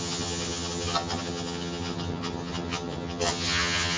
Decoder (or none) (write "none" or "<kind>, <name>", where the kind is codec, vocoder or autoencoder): vocoder, HiFi-GAN